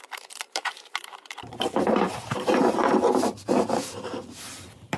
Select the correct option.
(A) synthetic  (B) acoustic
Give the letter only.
A